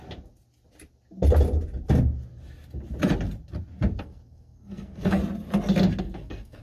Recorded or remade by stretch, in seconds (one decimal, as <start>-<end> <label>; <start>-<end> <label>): 0.0-4.0 recorded; 4.0-5.2 remade; 5.2-6.0 recorded; 6.0-6.6 remade